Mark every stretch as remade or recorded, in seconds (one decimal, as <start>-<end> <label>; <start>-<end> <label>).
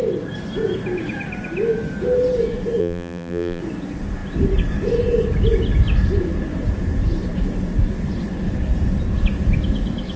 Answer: 0.0-2.8 recorded; 2.8-3.6 remade; 3.6-10.2 recorded